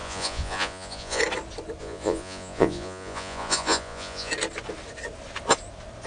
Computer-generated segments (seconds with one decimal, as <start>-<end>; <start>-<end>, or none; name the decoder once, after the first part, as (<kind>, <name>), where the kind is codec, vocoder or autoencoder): 0.0-1.2 (vocoder, Vocos); 1.8-4.3